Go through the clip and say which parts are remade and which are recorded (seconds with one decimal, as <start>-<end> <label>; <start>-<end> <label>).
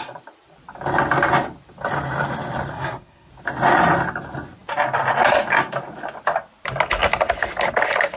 0.0-2.7 recorded; 2.7-3.3 remade; 3.3-8.2 recorded